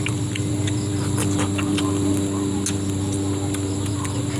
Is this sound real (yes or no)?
yes